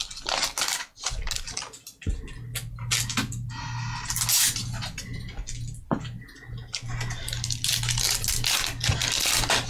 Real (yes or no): yes